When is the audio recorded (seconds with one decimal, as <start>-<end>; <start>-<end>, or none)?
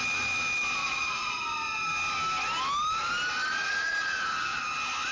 0.0-0.8; 1.4-3.5; 4.6-5.1